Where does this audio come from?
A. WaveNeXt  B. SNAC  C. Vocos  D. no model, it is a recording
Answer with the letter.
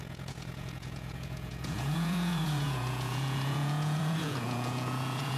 C